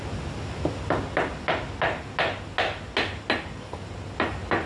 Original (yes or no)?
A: yes